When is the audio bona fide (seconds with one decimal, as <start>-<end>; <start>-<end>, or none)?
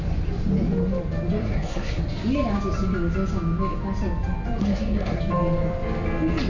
0.0-1.4; 2.0-4.6; 5.2-6.5